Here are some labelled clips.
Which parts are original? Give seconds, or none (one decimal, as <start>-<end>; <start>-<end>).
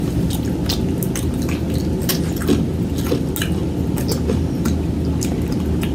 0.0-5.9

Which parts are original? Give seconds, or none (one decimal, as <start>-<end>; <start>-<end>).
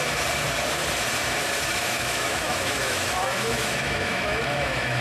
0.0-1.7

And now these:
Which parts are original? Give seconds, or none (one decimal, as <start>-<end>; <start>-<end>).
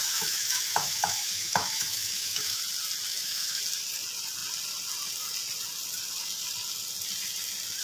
2.6-3.1; 3.6-7.8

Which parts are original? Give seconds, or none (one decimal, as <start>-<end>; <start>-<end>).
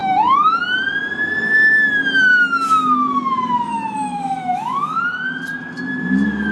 0.6-2.3; 5.0-6.5